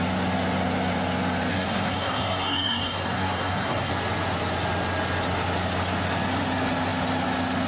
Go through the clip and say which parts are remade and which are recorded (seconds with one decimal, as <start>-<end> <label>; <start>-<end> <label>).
0.0-1.5 recorded; 1.5-3.9 remade; 3.9-7.7 recorded